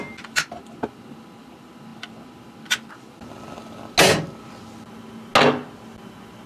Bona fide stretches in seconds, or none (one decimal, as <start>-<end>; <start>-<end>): 0.0-6.5